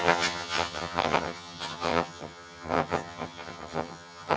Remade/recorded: remade